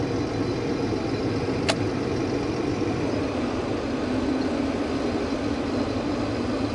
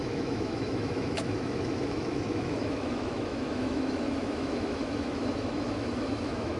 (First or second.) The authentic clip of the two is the first